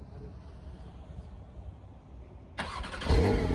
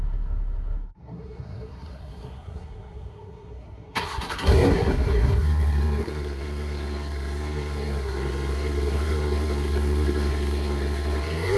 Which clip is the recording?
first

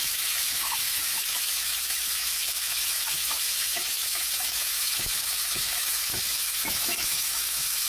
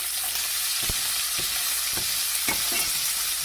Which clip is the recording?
second